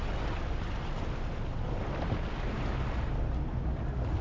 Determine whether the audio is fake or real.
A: real